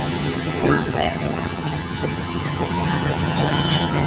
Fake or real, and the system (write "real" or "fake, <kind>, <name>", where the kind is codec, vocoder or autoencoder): fake, vocoder, HiFi-GAN